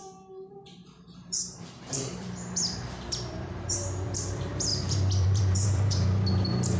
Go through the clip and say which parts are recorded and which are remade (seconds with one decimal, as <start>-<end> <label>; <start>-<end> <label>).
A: 0.0-6.8 remade